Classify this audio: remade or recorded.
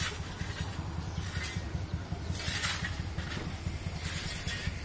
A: recorded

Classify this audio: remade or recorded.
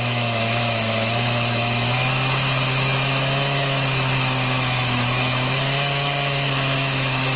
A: remade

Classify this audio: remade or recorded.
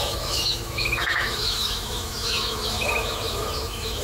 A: remade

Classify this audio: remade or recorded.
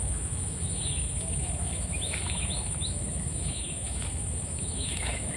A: remade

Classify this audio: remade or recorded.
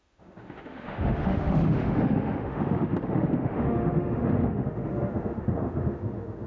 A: remade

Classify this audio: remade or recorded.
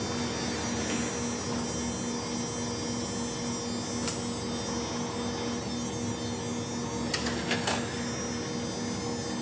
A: recorded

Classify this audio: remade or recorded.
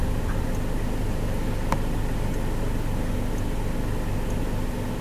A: recorded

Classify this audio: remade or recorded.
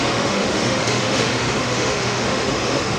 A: remade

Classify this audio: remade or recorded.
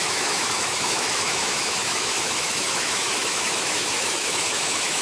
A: remade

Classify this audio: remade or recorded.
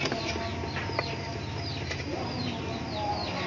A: recorded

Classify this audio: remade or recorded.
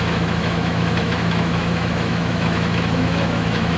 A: remade